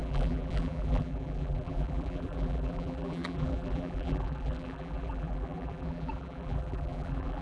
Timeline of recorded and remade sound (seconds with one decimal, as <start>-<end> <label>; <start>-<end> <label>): 0.0-7.4 remade